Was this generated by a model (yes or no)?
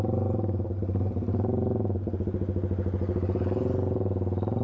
no